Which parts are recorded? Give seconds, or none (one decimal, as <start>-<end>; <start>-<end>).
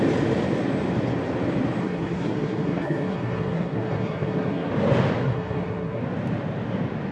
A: 0.0-1.8; 4.7-5.2; 6.0-7.1